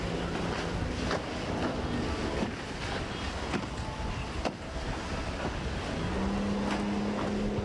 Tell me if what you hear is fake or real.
real